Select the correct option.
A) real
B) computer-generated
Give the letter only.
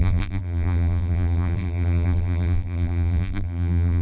B